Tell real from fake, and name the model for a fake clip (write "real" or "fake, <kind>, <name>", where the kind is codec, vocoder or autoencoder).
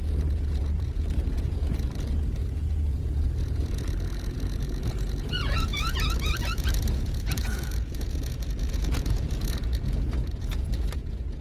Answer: fake, vocoder, Vocos